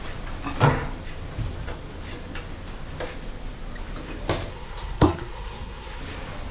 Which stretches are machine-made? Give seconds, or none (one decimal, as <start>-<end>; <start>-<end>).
4.5-6.0